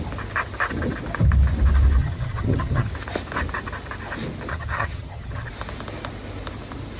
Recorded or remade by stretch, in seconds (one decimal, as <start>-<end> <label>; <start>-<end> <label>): 0.0-2.0 recorded; 2.0-2.9 remade; 2.9-4.5 recorded; 4.5-5.5 remade; 5.5-7.0 recorded